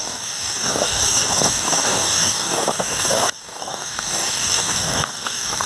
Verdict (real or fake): fake